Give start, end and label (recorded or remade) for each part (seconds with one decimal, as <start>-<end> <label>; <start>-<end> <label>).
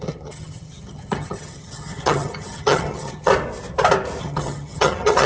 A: 0.0-3.3 remade; 3.3-4.2 recorded; 4.2-5.3 remade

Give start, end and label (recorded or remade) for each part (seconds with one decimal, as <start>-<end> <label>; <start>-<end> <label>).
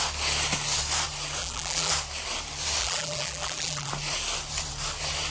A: 0.0-1.4 recorded; 1.4-1.9 remade; 1.9-2.8 recorded; 2.8-3.9 remade; 3.9-5.3 recorded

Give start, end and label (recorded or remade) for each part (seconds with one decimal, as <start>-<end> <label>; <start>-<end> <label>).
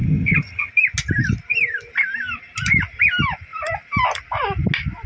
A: 0.0-0.7 remade; 0.7-5.1 recorded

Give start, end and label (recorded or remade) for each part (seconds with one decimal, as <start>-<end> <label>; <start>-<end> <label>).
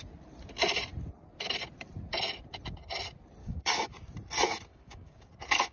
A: 0.0-3.4 recorded; 3.4-3.9 remade; 3.9-4.7 recorded; 4.7-5.3 remade; 5.3-5.7 recorded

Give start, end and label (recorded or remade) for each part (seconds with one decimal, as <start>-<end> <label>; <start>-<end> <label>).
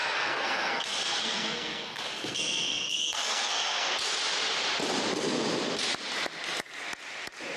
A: 0.0-3.9 remade; 3.9-7.6 recorded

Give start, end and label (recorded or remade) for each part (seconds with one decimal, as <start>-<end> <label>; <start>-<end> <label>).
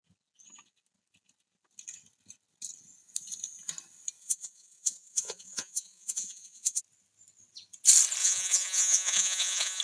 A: 0.0-4.2 recorded; 4.2-6.8 remade; 6.8-8.2 recorded; 8.2-9.8 remade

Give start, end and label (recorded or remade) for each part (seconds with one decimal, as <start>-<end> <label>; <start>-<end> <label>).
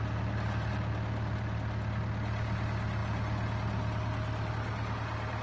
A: 0.0-5.4 recorded